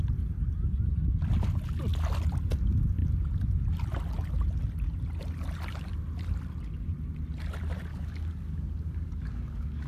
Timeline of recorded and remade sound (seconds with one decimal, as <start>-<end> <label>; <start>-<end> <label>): 0.0-7.9 recorded; 7.9-9.9 remade